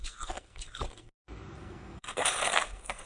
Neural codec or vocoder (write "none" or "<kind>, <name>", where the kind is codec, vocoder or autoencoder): codec, SNAC